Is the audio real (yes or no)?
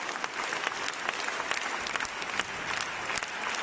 yes